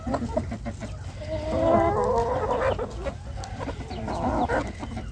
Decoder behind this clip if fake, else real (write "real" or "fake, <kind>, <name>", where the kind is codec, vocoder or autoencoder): real